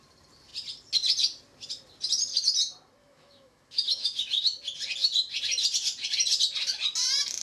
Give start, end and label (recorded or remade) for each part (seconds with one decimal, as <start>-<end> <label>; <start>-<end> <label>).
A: 0.0-3.0 recorded; 3.0-4.4 remade; 4.4-7.4 recorded

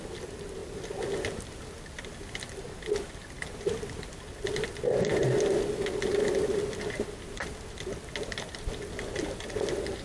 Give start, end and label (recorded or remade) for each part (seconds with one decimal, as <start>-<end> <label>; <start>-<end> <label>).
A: 0.0-10.0 recorded

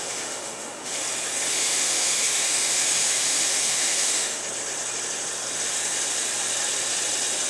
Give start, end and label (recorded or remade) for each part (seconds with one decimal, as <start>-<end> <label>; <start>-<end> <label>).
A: 0.0-1.0 remade; 1.0-1.5 recorded; 1.5-4.4 remade; 4.4-7.5 recorded

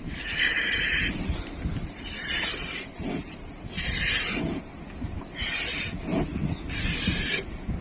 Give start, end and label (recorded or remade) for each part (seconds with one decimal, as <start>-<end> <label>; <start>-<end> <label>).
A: 0.0-6.1 remade; 6.1-7.8 recorded

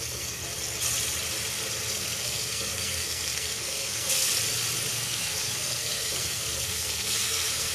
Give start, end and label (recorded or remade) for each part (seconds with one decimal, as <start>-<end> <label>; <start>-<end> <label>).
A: 0.0-0.4 remade; 0.4-1.9 recorded; 1.9-4.3 remade; 4.3-4.9 recorded; 4.9-7.7 remade

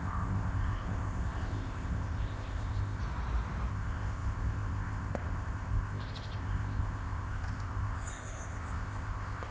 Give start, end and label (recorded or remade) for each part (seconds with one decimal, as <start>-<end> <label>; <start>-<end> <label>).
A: 0.0-3.0 remade; 3.0-3.7 recorded; 3.7-9.5 remade

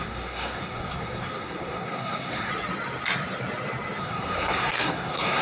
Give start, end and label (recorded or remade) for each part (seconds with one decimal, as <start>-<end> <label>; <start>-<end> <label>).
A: 0.0-2.5 remade; 2.5-4.0 recorded; 4.0-5.4 remade